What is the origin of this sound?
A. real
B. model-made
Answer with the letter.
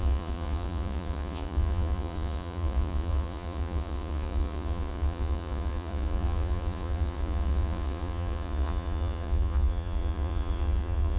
B